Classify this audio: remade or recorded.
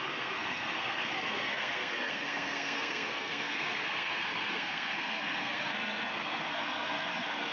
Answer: remade